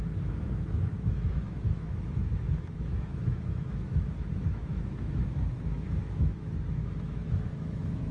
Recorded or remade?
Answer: remade